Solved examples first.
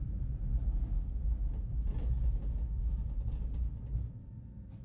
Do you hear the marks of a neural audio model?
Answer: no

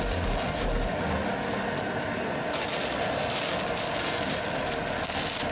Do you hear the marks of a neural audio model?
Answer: no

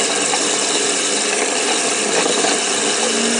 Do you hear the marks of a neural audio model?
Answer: no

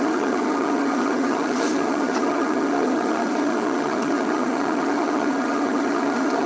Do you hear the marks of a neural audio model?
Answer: yes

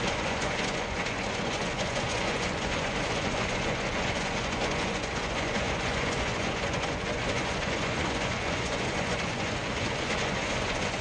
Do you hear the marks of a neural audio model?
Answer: yes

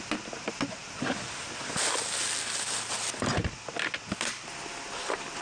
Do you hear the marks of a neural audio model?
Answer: no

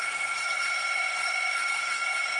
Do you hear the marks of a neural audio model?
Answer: yes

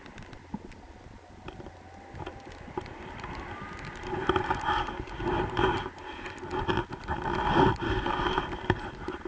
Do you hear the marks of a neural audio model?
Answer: no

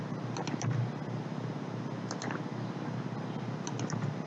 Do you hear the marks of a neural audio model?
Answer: no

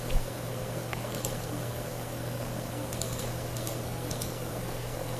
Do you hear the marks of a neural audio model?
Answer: yes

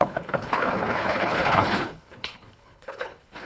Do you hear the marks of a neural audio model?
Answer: yes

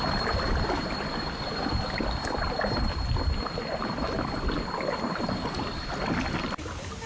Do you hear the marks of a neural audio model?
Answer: yes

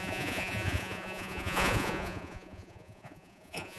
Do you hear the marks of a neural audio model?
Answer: yes